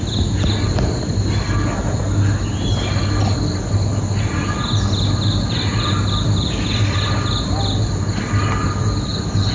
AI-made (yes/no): no